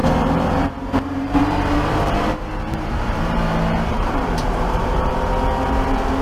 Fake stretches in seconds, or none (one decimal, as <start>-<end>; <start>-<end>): 0.0-3.4; 3.9-5.1